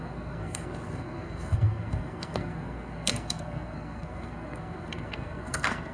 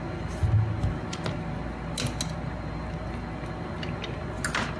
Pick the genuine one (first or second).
second